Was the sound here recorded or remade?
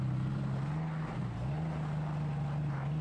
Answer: recorded